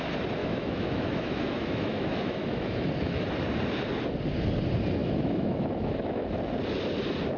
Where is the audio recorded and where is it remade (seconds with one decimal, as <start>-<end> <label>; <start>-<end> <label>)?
0.0-0.4 recorded; 0.4-2.9 remade; 2.9-5.0 recorded; 5.0-6.3 remade; 6.3-7.4 recorded